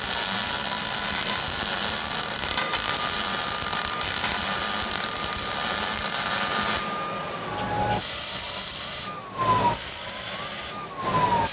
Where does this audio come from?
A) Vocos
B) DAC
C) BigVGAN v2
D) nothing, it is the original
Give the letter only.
D